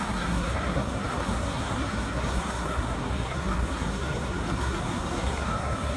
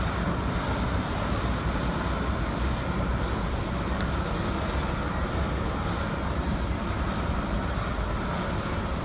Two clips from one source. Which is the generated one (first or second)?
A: first